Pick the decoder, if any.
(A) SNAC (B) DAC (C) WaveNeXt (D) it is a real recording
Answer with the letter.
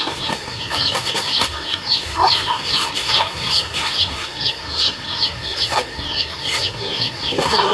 A